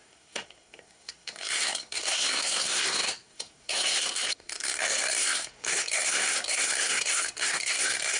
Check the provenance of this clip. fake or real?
fake